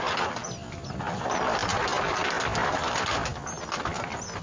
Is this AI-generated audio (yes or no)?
no